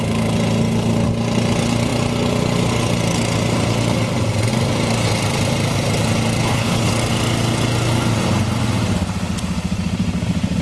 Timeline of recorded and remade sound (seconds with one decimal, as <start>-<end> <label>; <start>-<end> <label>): 0.0-6.4 recorded; 6.4-6.9 remade; 6.9-10.6 recorded